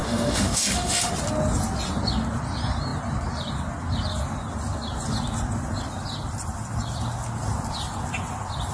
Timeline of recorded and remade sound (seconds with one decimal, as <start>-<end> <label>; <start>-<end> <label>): 0.0-1.1 remade; 1.1-8.7 recorded